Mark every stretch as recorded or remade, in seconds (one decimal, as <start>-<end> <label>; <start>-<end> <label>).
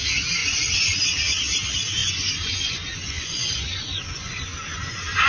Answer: 0.0-0.4 recorded; 0.4-1.0 remade; 1.0-2.0 recorded; 2.0-5.3 remade